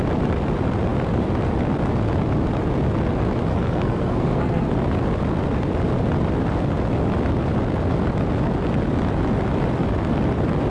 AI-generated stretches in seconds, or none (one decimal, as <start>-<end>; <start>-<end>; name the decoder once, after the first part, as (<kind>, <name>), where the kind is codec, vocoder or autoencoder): 3.5-4.7 (codec, SNAC)